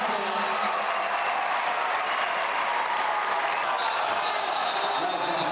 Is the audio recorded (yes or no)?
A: yes